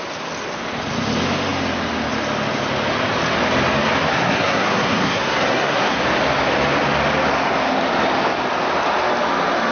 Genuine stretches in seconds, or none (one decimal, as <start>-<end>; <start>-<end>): 0.0-4.1; 6.0-9.7